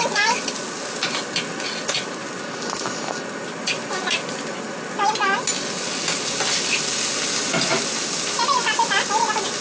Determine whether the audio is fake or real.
real